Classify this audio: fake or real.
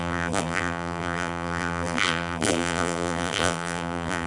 fake